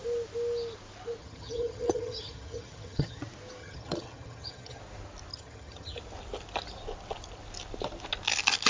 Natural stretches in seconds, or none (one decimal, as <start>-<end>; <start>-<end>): 0.0-1.2; 3.2-3.6; 4.8-5.3; 6.0-8.7